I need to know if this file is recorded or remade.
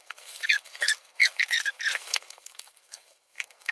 remade